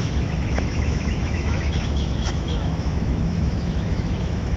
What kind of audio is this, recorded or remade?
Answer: remade